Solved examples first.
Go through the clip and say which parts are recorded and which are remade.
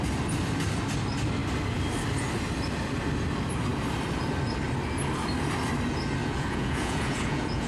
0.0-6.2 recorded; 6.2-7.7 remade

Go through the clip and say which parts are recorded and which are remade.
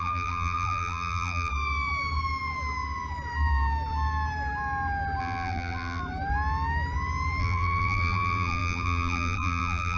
0.0-1.5 remade; 1.5-5.2 recorded; 5.2-6.0 remade; 6.0-7.4 recorded; 7.4-10.0 remade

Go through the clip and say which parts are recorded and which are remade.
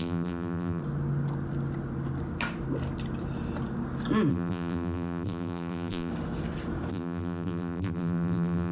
0.0-0.8 remade; 0.8-4.3 recorded; 4.3-6.1 remade; 6.1-6.9 recorded; 6.9-8.7 remade